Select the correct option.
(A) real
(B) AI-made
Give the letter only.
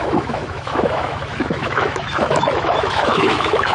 B